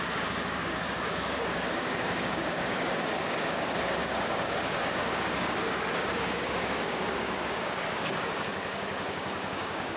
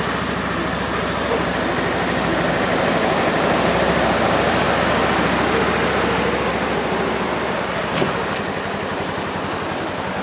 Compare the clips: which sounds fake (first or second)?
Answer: first